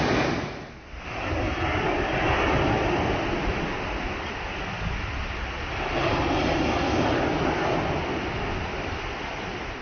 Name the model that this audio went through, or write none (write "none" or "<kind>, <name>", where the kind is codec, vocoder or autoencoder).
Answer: none